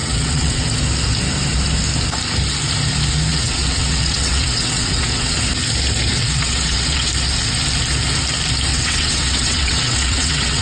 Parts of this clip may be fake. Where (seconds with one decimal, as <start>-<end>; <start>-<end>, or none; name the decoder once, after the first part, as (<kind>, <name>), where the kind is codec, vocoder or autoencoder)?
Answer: 0.0-0.6 (vocoder, WaveNeXt); 3.3-5.4; 6.1-7.1; 8.7-10.6